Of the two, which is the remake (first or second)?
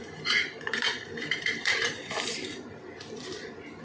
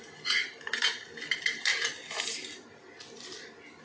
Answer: first